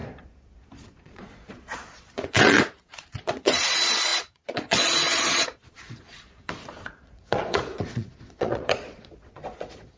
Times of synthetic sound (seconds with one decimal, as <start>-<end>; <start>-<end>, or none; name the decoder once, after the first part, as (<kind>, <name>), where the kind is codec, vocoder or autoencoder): 0.0-10.0 (vocoder, Vocos)